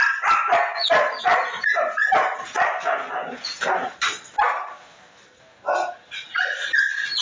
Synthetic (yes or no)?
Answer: no